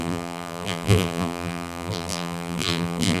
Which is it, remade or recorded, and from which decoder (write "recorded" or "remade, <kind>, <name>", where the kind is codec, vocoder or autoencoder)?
remade, vocoder, BigVGAN v2